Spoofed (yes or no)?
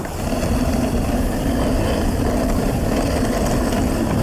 no